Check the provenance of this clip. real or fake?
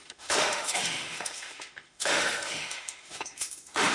fake